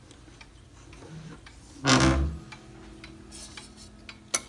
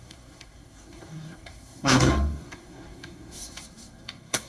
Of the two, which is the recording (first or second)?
first